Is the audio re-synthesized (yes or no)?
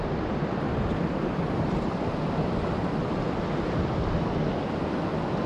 no